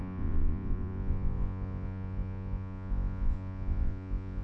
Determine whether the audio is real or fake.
fake